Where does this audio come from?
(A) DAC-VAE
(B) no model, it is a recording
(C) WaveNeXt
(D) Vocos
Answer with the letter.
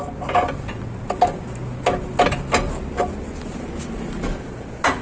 B